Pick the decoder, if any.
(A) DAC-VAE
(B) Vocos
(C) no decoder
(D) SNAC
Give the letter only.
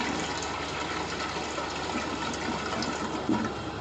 C